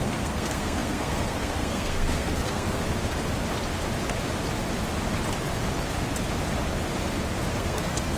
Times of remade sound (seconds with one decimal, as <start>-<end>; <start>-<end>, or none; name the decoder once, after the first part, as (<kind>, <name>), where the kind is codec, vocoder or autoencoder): 0.0-2.8 (codec, SNAC); 7.5-8.2